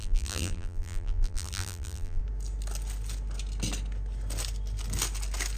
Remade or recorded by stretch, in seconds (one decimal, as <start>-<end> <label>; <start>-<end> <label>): 0.0-2.2 remade; 2.2-5.6 recorded